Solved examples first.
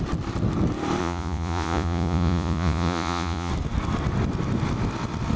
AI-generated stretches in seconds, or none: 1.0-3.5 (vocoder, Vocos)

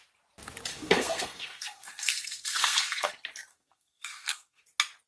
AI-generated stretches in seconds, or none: 0.7-3.1 (codec, SNAC); 3.5-4.6